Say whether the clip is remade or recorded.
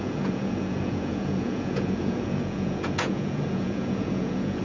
remade